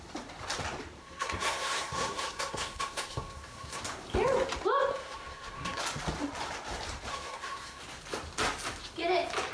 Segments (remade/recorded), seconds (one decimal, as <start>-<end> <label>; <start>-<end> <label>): 0.0-1.0 recorded; 1.0-3.8 remade; 3.8-4.9 recorded; 4.9-5.8 remade; 5.8-7.1 recorded; 7.1-7.8 remade; 7.8-9.5 recorded